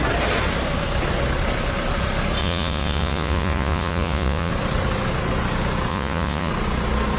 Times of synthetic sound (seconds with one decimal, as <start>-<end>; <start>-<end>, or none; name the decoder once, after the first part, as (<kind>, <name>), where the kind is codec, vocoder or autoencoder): 2.4-4.5 (vocoder, Vocos); 5.9-6.5